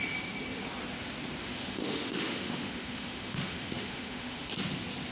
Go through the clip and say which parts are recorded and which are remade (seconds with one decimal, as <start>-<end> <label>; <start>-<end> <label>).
0.0-1.4 recorded; 1.4-4.5 remade; 4.5-5.1 recorded